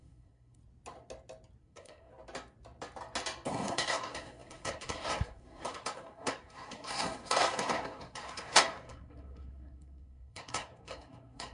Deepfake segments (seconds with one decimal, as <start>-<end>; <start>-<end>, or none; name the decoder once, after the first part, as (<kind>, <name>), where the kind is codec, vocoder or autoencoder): 0.0-0.6 (codec, SNAC); 1.6-2.1; 3.5-11.5